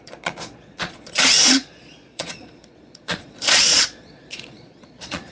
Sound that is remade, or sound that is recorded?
remade